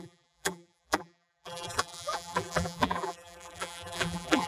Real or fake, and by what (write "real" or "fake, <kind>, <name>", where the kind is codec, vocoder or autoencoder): fake, vocoder, BigVGAN v2